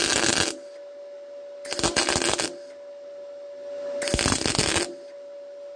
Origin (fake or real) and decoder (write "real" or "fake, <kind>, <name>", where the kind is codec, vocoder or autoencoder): real